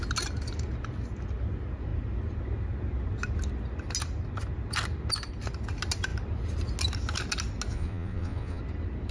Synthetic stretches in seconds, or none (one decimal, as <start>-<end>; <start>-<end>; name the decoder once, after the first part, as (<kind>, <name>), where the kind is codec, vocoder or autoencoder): 7.7-8.6 (vocoder, Vocos)